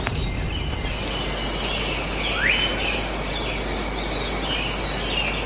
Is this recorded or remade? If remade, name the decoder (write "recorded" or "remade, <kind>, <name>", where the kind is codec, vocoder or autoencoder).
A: recorded